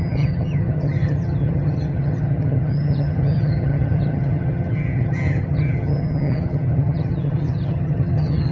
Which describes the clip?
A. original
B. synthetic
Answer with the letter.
B